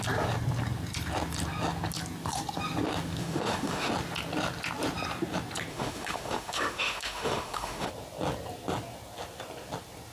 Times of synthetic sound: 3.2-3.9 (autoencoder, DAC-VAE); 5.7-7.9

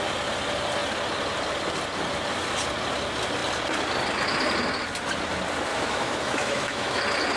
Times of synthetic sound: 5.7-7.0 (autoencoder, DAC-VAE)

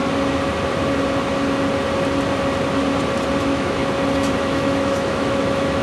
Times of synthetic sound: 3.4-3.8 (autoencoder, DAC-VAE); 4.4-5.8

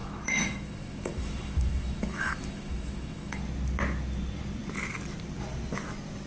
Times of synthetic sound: 0.0-3.4 (autoencoder, DAC-VAE)

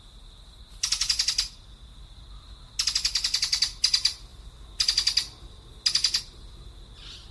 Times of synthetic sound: none

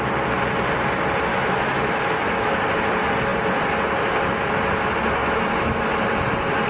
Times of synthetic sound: 1.3-2.6 (autoencoder, DAC-VAE); 5.2-6.1

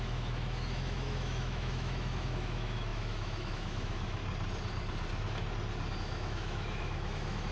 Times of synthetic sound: 0.0-4.2 (autoencoder, DAC-VAE); 6.0-7.5

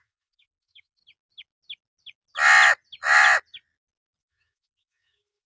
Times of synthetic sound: 0.0-1.0 (autoencoder, DAC-VAE); 4.2-5.5